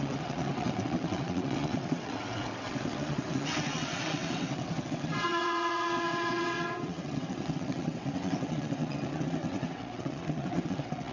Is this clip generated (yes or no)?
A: yes